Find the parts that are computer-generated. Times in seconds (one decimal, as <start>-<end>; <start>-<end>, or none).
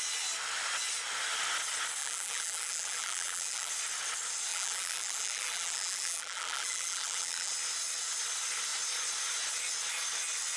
2.0-3.7; 4.5-7.5